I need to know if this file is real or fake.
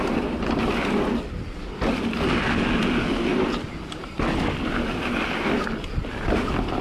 real